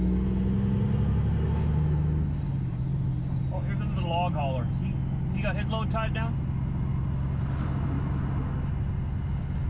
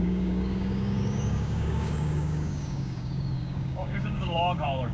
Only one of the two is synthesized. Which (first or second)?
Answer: second